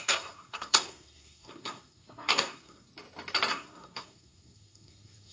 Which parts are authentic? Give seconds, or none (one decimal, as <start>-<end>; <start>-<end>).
2.9-3.5